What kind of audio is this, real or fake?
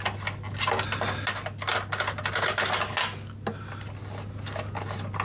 real